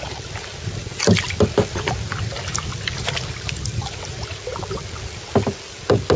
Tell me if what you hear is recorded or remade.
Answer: recorded